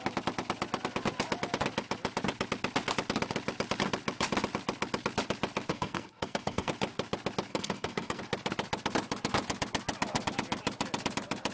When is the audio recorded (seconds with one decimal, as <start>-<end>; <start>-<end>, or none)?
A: 0.0-5.7; 6.7-7.5; 8.2-11.5